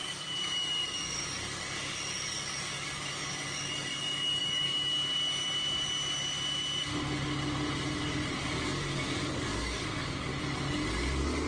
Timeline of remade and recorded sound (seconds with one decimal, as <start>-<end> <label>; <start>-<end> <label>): 0.0-4.9 remade; 4.9-8.4 recorded; 8.4-10.3 remade; 10.3-11.5 recorded